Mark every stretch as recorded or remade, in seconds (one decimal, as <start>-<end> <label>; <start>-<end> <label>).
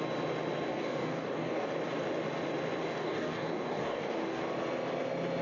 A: 0.0-0.7 recorded; 0.7-1.7 remade; 1.7-2.8 recorded; 2.8-4.4 remade; 4.4-5.4 recorded